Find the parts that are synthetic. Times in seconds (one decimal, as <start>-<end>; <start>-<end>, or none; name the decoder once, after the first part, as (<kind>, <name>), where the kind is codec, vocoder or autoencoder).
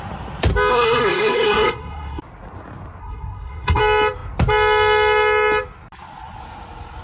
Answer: 0.7-2.2 (codec, SNAC); 3.0-3.8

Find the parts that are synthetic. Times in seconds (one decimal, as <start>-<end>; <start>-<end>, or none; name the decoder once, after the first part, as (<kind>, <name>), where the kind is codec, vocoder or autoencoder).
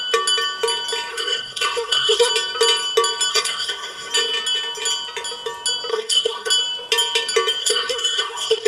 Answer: 1.1-2.3 (codec, SNAC); 3.3-4.1; 5.9-6.5; 7.6-8.7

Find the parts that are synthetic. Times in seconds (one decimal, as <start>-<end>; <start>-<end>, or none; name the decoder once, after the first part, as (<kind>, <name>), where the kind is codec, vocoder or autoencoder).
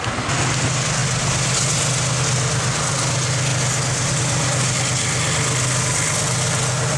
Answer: none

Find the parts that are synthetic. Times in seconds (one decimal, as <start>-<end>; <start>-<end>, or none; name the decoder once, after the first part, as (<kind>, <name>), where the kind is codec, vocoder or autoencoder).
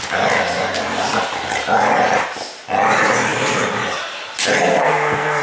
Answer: 4.7-5.4 (codec, SNAC)